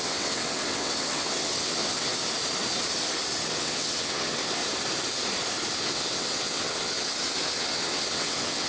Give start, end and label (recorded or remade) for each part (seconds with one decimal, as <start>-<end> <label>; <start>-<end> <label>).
0.0-2.1 remade; 2.1-3.5 recorded; 3.5-4.6 remade; 4.6-5.8 recorded; 5.8-8.7 remade